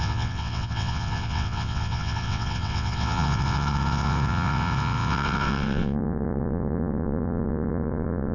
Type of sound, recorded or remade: remade